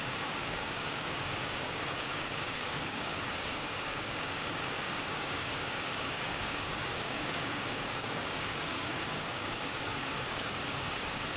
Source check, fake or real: fake